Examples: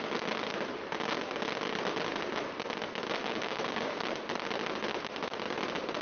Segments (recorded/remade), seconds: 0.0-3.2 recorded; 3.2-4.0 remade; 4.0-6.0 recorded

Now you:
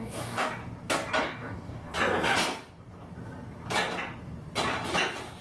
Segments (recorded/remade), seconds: 0.0-0.6 remade; 0.6-1.2 recorded; 1.2-1.9 remade; 1.9-5.4 recorded

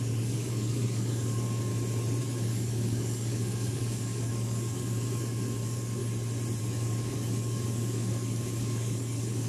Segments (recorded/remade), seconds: 0.0-1.7 remade; 1.7-2.2 recorded; 2.2-6.0 remade; 6.0-6.6 recorded; 6.6-9.5 remade

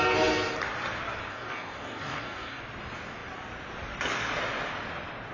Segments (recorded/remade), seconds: 0.0-1.3 recorded; 1.3-2.6 remade; 2.6-5.3 recorded

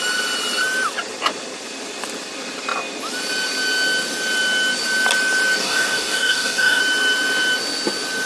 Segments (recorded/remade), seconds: 0.0-5.6 recorded; 5.6-6.8 remade; 6.8-8.3 recorded

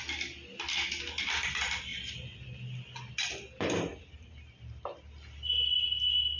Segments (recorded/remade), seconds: 0.0-6.4 recorded

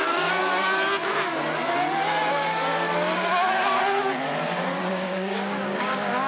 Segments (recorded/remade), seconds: 0.0-0.4 remade; 0.4-2.3 recorded; 2.3-3.3 remade; 3.3-4.9 recorded; 4.9-6.3 remade

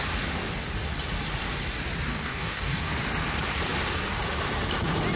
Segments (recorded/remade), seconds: 0.0-2.1 recorded; 2.1-2.9 remade; 2.9-5.2 recorded